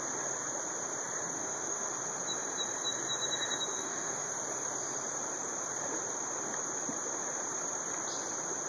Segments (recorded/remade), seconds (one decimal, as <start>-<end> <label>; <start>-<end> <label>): 0.0-1.4 recorded; 1.4-1.9 remade; 1.9-3.7 recorded; 3.7-4.3 remade; 4.3-8.7 recorded